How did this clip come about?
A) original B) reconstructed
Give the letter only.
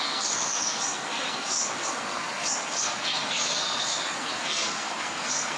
B